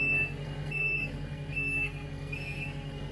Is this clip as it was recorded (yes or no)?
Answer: no